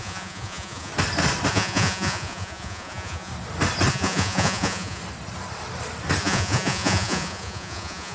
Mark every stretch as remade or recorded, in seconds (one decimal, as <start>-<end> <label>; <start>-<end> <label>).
0.0-0.9 remade; 0.9-1.5 recorded; 1.5-3.3 remade; 3.3-3.9 recorded; 3.9-5.0 remade; 5.0-6.2 recorded; 6.2-8.1 remade